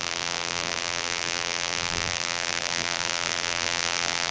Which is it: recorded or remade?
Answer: remade